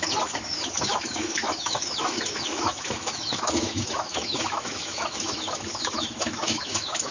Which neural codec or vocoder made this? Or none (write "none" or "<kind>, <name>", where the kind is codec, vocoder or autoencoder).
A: autoencoder, DAC-VAE